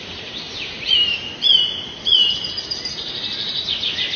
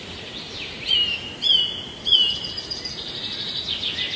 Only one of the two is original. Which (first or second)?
second